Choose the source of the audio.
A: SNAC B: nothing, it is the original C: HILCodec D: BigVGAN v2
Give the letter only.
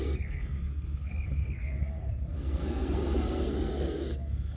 A